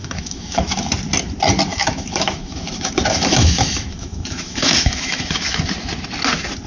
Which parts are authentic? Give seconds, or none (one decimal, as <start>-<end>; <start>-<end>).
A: 0.9-1.7; 5.6-6.7